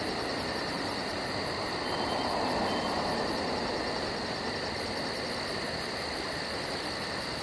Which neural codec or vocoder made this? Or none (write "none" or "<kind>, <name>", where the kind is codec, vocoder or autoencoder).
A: none